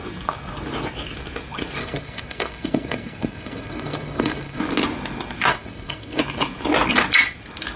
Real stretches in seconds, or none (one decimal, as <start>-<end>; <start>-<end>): 0.0-1.8; 4.6-5.5; 6.2-7.8